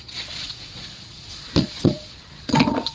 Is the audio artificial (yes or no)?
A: yes